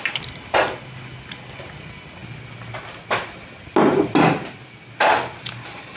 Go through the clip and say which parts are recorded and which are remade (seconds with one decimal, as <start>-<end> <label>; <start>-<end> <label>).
0.0-6.0 recorded